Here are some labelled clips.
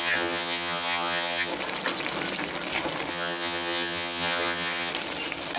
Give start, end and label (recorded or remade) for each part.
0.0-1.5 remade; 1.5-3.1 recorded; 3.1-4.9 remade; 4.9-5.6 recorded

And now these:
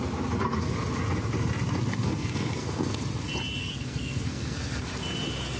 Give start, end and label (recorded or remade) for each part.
0.0-1.9 recorded; 1.9-3.0 remade; 3.0-3.6 recorded; 3.6-4.9 remade; 4.9-5.6 recorded

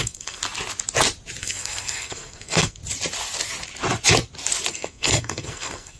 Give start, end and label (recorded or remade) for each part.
0.0-0.4 remade; 0.4-1.4 recorded; 1.4-2.8 remade; 2.8-4.7 recorded; 4.7-6.0 remade

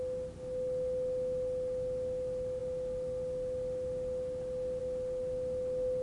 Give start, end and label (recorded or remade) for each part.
0.0-6.0 recorded

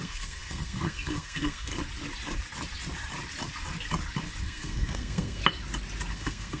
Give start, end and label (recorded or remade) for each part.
0.0-1.7 remade; 1.7-4.4 recorded; 4.4-5.4 remade; 5.4-6.1 recorded; 6.1-6.6 remade